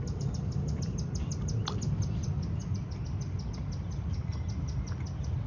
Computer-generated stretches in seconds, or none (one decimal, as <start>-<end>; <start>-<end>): none